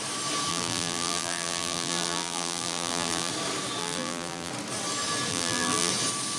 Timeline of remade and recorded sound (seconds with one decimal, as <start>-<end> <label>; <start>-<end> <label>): 0.0-0.5 recorded; 0.5-3.3 remade; 3.3-3.8 recorded; 3.8-4.5 remade; 4.5-5.3 recorded; 5.3-5.9 remade; 5.9-6.4 recorded